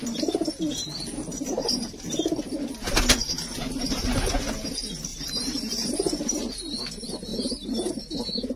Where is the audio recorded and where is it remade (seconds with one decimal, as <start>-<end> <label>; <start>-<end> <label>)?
0.0-1.3 recorded; 1.3-2.1 remade; 2.1-5.1 recorded; 5.1-6.5 remade; 6.5-7.3 recorded; 7.3-7.9 remade; 7.9-8.6 recorded